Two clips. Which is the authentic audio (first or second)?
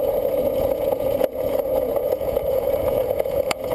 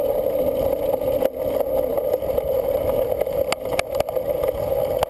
second